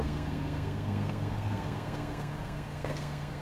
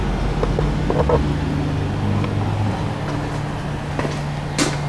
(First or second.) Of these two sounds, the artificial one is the first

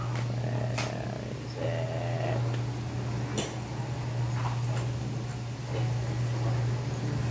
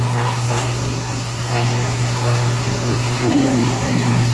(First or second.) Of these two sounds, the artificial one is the second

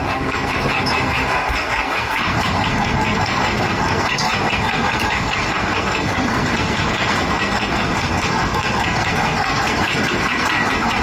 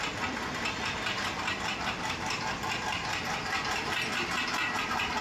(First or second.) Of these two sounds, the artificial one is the first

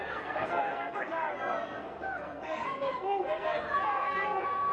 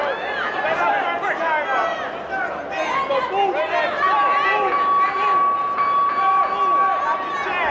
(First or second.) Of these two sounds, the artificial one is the first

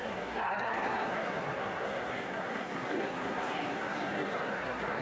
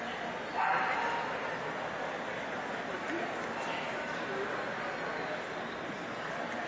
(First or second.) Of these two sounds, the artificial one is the first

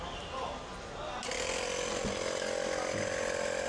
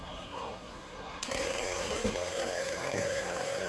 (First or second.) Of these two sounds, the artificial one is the second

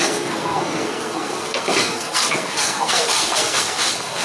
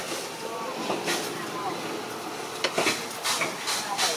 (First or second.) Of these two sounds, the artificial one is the first